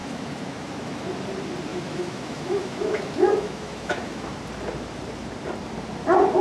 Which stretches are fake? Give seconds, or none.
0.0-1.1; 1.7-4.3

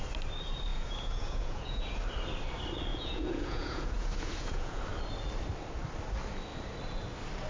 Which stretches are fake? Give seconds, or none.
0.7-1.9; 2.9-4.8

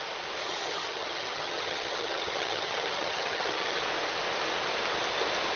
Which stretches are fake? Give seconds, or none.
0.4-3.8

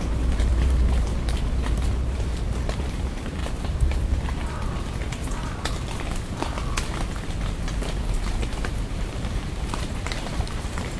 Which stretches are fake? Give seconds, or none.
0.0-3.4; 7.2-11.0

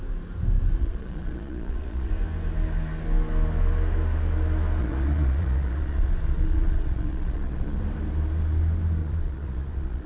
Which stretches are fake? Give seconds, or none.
0.8-2.1; 4.8-7.8; 9.0-10.1

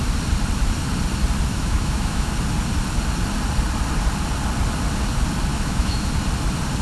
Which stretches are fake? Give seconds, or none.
1.5-2.3; 5.5-6.1

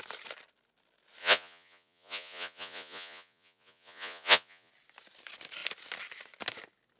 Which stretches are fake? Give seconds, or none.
1.2-4.7

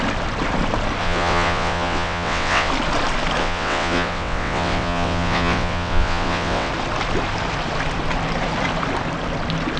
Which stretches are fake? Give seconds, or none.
1.0-2.7; 3.4-6.7